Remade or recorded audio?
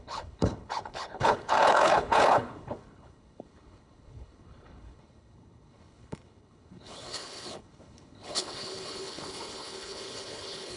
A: remade